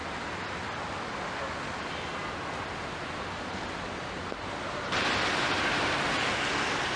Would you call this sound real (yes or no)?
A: yes